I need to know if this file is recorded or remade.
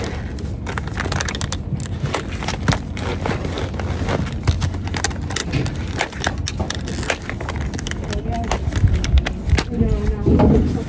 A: recorded